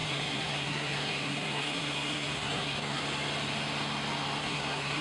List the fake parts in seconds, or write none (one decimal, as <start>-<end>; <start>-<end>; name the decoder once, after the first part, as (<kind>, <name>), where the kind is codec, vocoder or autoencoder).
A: 0.0-3.0 (codec, SNAC); 4.4-5.0